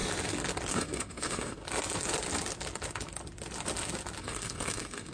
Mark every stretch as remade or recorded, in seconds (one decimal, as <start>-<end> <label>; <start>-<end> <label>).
0.0-0.7 recorded; 0.7-1.6 remade; 1.6-4.2 recorded; 4.2-5.1 remade